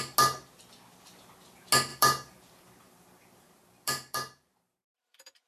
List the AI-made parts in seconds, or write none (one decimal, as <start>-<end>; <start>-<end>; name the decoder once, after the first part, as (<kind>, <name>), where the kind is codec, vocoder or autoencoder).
1.9-5.5 (vocoder, BigVGAN v2)